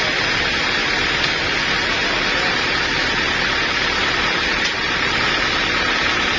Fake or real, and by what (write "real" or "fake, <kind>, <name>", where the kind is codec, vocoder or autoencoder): real